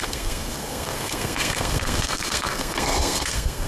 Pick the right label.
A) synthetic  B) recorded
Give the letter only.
A